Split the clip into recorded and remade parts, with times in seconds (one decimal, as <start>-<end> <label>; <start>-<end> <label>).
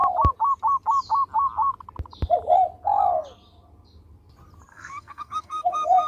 0.0-4.7 recorded; 4.7-6.1 remade